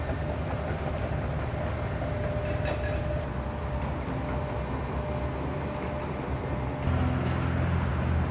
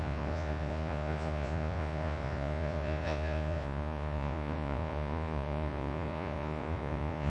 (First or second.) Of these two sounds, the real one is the first